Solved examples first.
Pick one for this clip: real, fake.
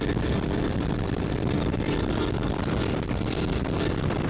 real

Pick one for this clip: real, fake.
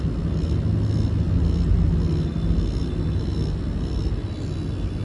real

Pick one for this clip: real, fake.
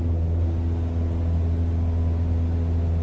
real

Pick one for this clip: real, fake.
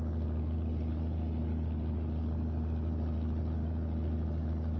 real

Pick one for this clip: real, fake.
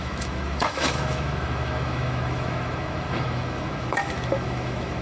fake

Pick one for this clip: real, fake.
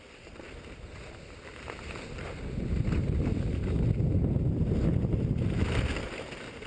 real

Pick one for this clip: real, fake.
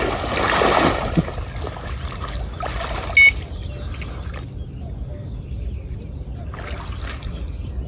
real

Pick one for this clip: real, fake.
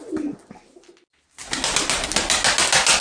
real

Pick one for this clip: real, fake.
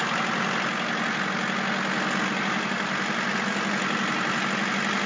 real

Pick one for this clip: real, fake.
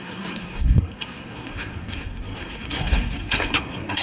fake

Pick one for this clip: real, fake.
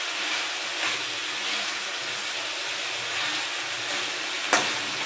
real